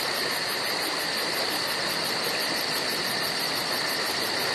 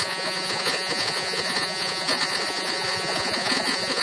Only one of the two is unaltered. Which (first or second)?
first